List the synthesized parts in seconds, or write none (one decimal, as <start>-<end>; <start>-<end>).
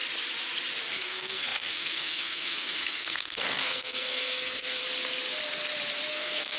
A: 0.9-4.8; 6.1-6.6